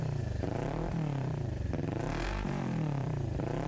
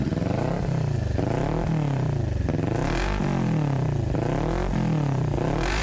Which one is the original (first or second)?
second